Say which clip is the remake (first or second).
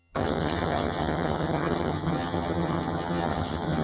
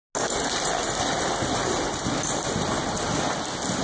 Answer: first